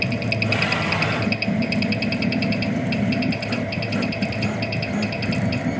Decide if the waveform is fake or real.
real